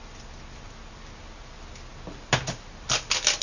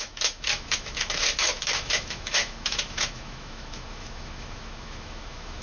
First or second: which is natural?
first